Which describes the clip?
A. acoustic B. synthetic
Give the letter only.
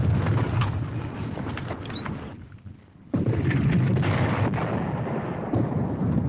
A